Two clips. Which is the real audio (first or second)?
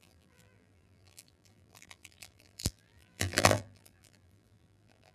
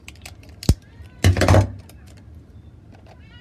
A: second